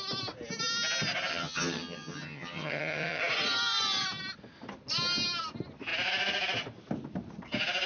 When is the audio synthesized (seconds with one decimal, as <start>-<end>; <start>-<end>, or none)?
1.3-3.2